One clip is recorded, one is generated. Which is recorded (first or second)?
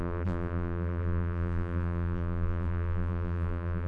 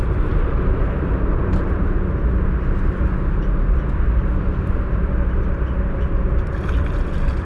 second